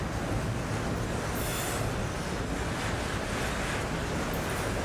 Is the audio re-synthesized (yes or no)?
no